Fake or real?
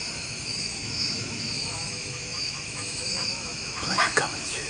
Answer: fake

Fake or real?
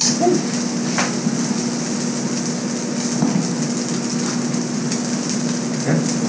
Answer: real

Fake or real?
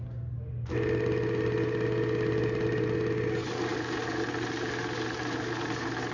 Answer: real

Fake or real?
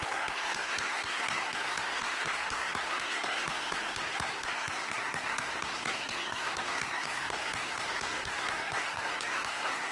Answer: fake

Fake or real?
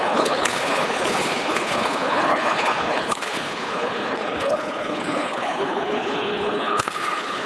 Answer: fake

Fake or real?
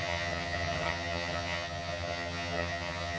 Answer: fake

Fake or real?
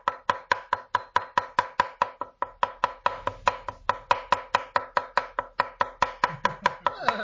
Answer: real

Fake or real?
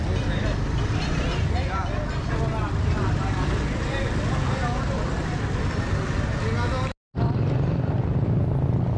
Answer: real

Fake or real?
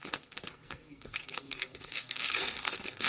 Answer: fake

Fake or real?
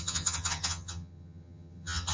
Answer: fake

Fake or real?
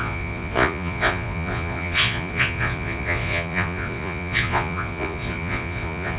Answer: fake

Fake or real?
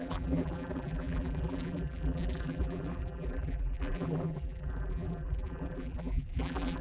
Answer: fake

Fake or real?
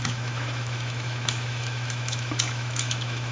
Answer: fake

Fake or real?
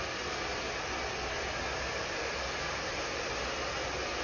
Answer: real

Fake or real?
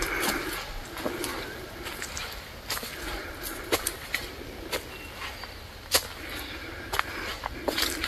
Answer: real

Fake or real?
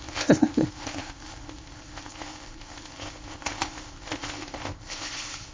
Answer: fake